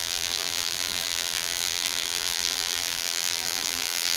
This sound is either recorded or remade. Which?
remade